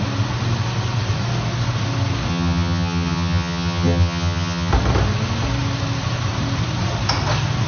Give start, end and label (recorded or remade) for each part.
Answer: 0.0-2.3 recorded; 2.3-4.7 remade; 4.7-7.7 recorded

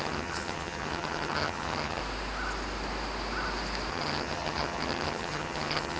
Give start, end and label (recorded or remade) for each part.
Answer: 0.0-2.0 remade; 2.0-3.9 recorded; 3.9-6.0 remade

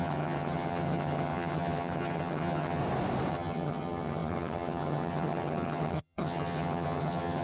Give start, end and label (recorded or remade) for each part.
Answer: 0.0-2.8 remade; 2.8-3.3 recorded; 3.3-7.4 remade

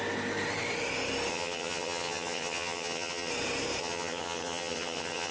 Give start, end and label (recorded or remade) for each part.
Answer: 0.0-1.3 recorded; 1.3-3.3 remade; 3.3-3.8 recorded; 3.8-5.3 remade

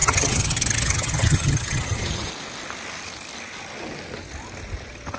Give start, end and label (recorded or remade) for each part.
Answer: 0.0-2.3 remade; 2.3-5.2 recorded

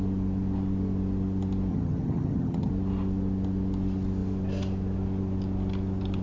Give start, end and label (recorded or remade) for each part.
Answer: 0.0-1.7 recorded; 1.7-2.7 remade; 2.7-6.2 recorded

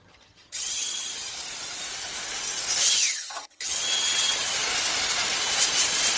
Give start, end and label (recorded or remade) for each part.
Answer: 0.0-1.5 remade; 1.5-2.9 recorded; 2.9-4.7 remade; 4.7-6.2 recorded

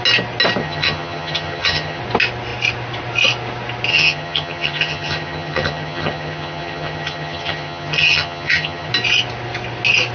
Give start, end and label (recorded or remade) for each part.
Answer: 0.0-0.6 recorded; 0.6-2.0 remade; 2.0-3.9 recorded; 3.9-8.9 remade; 8.9-10.1 recorded